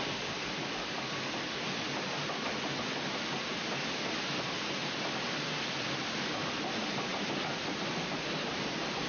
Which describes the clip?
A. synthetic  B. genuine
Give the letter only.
B